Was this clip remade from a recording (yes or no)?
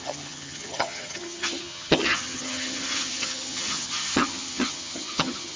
yes